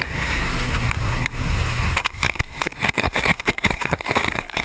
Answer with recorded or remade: remade